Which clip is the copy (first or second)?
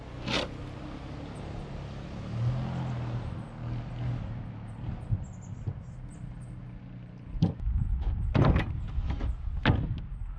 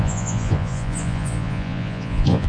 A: second